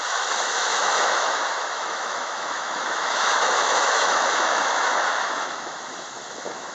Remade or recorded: remade